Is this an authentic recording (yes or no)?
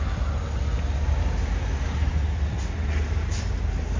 yes